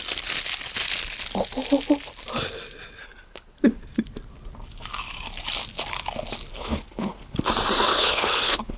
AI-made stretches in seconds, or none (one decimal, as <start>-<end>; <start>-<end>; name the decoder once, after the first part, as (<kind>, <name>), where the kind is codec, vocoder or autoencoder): 3.0-3.8 (codec, HILCodec); 6.5-7.5; 7.9-8.8